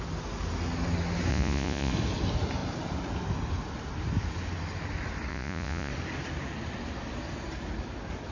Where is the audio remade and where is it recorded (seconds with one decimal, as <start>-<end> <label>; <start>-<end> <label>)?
0.0-1.3 recorded; 1.3-1.9 remade; 1.9-5.3 recorded; 5.3-5.9 remade; 5.9-8.3 recorded